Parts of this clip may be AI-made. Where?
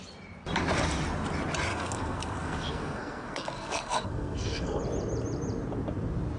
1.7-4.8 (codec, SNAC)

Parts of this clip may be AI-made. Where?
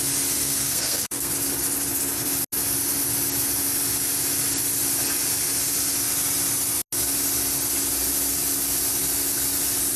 0.4-1.3 (codec, SNAC)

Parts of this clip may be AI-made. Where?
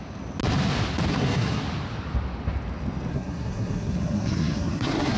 1.1-1.6 (codec, SNAC); 3.1-5.2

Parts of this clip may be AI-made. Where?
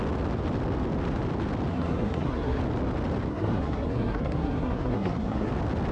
1.7-2.6 (codec, SNAC); 3.3-5.5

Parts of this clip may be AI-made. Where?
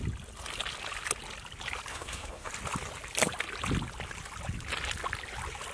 1.9-2.5 (codec, SNAC)